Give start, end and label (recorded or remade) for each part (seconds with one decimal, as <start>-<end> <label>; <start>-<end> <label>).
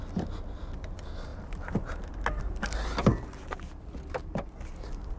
0.0-5.2 recorded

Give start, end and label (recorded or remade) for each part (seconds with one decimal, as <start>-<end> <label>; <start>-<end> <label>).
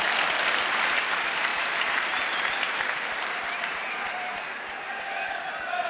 0.0-1.5 recorded; 1.5-5.0 remade; 5.0-5.9 recorded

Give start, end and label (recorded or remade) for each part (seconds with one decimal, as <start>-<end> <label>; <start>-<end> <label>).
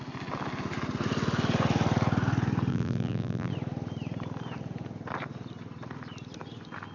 0.0-2.7 recorded; 2.7-3.5 remade; 3.5-6.9 recorded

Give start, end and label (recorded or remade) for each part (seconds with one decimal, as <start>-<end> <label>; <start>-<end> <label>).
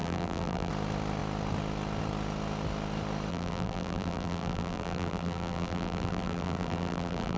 0.0-0.7 remade; 0.7-3.3 recorded; 3.3-7.4 remade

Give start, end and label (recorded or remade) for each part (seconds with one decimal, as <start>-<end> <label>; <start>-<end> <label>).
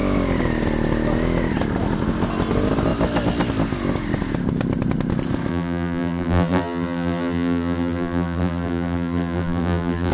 0.0-5.5 recorded; 5.5-10.1 remade